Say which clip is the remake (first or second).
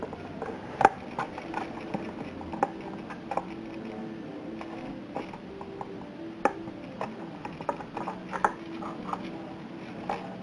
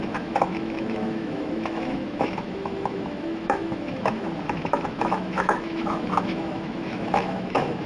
second